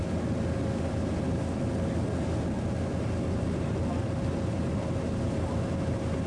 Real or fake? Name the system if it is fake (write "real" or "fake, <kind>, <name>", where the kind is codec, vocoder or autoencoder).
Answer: real